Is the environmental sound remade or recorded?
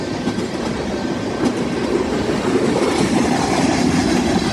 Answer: recorded